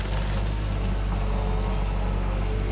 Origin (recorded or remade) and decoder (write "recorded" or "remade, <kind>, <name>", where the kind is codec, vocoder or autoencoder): recorded